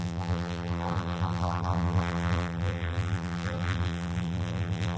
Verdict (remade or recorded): remade